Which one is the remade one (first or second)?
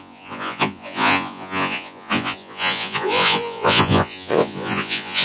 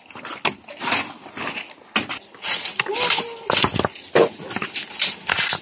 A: first